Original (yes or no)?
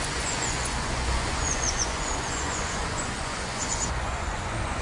no